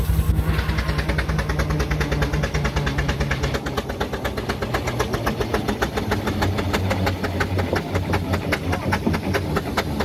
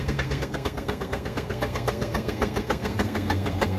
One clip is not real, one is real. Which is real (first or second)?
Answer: first